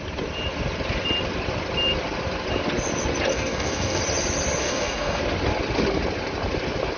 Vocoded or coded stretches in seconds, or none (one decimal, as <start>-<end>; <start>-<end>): 3.3-4.0; 4.6-5.2